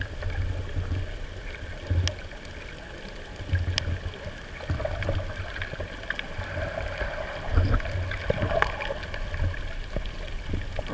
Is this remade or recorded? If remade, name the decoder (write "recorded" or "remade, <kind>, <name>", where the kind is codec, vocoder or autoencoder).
recorded